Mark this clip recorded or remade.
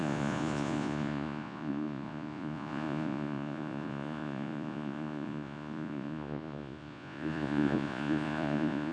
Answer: remade